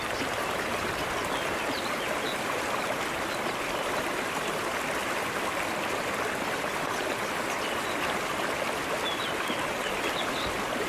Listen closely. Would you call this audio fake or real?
fake